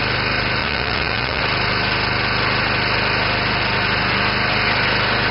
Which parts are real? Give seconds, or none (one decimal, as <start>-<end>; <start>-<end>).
0.0-0.6; 1.4-5.3

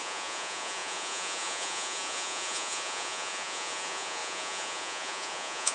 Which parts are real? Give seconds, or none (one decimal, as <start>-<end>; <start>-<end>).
none

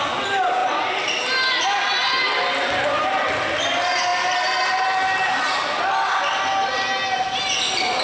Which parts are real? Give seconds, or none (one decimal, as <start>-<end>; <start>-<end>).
0.0-8.0

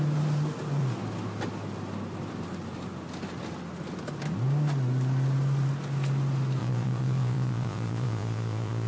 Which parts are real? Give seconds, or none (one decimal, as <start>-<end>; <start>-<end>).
0.0-6.6